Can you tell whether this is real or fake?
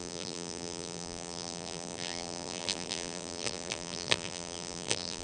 fake